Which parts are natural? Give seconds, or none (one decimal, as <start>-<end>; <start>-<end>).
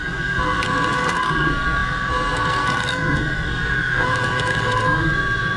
none